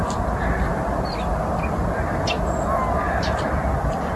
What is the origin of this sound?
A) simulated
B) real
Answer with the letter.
B